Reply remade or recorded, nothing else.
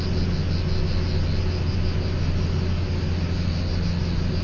recorded